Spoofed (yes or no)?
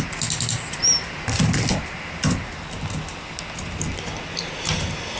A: no